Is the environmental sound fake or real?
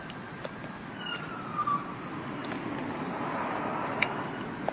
real